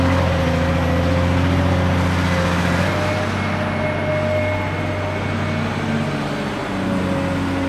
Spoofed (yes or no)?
no